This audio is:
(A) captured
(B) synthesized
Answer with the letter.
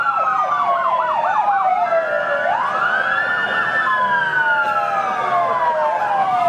A